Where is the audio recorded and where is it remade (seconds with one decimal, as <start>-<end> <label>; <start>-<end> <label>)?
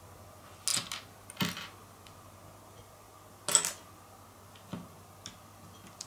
0.0-6.1 recorded